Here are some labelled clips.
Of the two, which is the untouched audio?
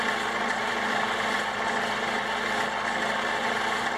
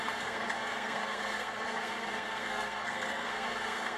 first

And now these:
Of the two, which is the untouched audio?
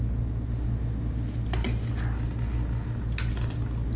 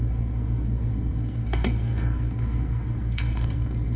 first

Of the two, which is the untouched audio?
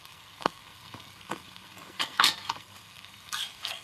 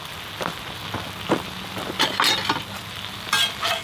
second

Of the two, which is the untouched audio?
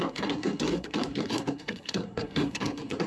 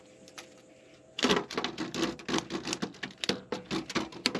second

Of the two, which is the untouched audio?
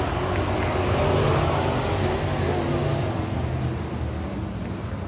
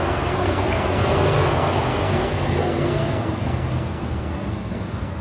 first